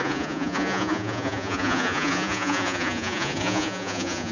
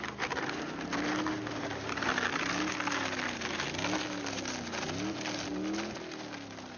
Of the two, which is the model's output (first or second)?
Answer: first